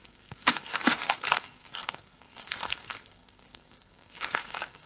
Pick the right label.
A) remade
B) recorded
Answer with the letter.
A